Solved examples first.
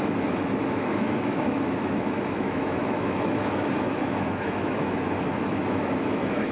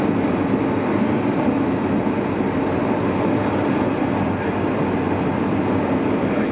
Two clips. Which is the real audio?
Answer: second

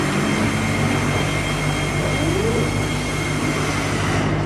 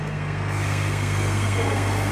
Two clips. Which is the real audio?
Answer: first